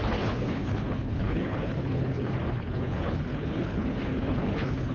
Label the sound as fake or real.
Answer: fake